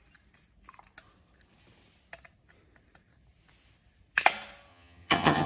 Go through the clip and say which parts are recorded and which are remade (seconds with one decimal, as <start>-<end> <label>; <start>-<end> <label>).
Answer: 0.0-4.7 recorded; 4.7-5.5 remade